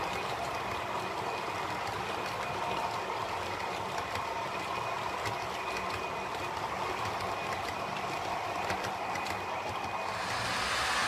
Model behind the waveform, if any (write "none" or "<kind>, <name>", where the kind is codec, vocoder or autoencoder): none